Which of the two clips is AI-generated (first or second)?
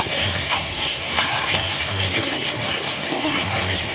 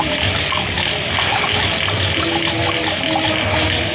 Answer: first